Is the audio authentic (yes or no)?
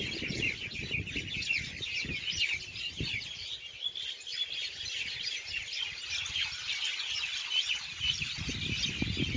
yes